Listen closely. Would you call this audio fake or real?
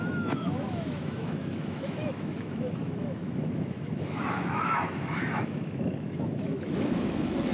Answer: fake